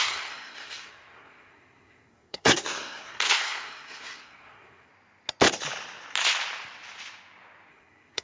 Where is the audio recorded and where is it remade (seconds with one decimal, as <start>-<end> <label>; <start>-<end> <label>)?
0.0-4.9 remade; 4.9-7.7 recorded; 7.7-8.2 remade